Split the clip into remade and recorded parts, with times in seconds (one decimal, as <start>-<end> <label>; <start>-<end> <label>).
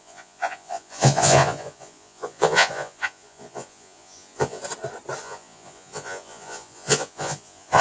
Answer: 0.0-4.6 remade; 4.6-5.2 recorded; 5.2-7.8 remade